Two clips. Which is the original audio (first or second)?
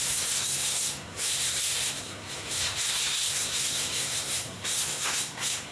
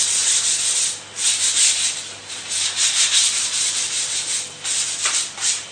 second